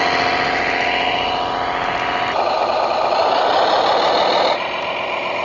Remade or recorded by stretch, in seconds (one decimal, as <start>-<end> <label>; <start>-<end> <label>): 0.0-5.4 recorded